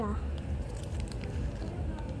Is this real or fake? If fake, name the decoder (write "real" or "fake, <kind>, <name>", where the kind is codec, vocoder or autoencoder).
real